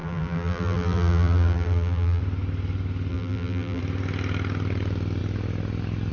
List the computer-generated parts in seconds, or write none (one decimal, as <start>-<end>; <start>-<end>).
0.0-2.2; 3.1-3.8